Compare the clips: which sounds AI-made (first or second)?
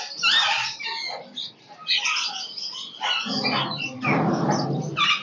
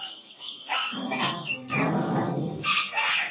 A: second